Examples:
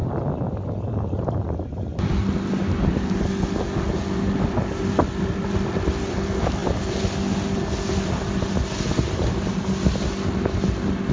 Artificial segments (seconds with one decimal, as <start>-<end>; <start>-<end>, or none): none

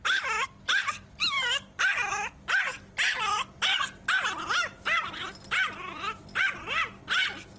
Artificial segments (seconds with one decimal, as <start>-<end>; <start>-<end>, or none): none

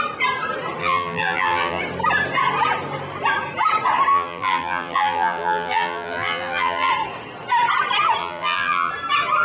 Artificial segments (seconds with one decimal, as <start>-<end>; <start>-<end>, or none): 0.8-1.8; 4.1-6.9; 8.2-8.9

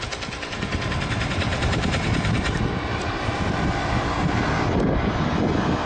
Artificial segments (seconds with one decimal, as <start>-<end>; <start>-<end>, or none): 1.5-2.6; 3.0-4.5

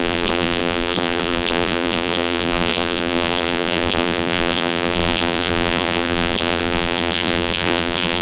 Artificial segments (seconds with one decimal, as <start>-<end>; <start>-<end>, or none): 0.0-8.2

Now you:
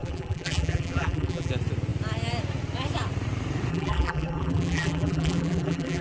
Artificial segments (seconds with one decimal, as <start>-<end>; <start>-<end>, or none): 0.0-1.5; 3.7-6.0

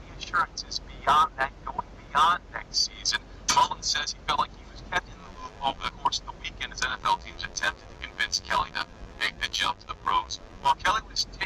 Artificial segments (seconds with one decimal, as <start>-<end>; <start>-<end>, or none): 5.2-5.9; 6.9-10.7